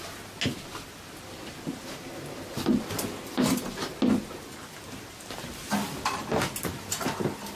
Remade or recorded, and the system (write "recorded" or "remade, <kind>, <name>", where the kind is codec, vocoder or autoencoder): recorded